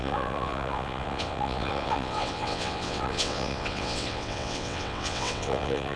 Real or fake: fake